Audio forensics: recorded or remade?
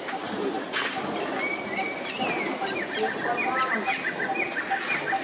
recorded